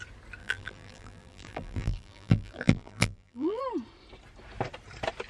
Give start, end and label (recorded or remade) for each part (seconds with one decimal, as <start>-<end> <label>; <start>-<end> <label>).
0.0-0.4 recorded; 0.4-3.6 remade; 3.6-5.3 recorded

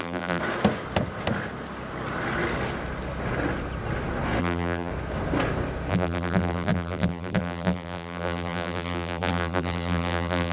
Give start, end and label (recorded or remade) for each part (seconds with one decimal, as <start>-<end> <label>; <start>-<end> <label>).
0.0-0.4 remade; 0.4-4.4 recorded; 4.4-4.9 remade; 4.9-5.9 recorded; 5.9-10.5 remade

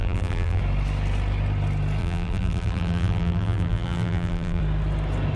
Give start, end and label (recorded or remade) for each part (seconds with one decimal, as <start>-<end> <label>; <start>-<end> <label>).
0.0-0.6 remade; 0.6-2.0 recorded; 2.0-4.6 remade; 4.6-5.4 recorded

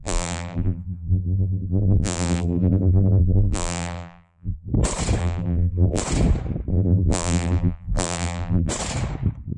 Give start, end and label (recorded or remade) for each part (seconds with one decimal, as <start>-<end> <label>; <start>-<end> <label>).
0.0-4.7 remade; 4.7-5.2 recorded; 5.2-6.0 remade; 6.0-6.7 recorded; 6.7-8.7 remade; 8.7-9.6 recorded

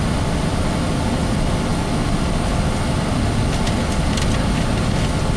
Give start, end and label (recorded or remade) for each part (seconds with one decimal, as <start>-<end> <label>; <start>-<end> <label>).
0.0-5.4 recorded

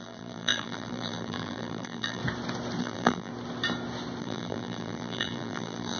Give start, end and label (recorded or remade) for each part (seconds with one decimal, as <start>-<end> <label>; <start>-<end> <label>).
0.0-2.2 remade; 2.2-2.8 recorded; 2.8-3.3 remade; 3.3-4.2 recorded; 4.2-6.0 remade